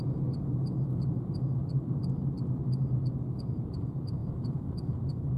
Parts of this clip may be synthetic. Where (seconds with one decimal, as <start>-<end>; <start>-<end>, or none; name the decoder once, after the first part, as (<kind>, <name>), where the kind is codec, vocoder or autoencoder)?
0.0-1.6 (vocoder, Vocos); 3.3-5.4